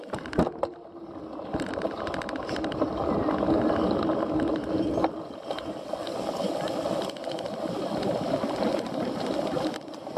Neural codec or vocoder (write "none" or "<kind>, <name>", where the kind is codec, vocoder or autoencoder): none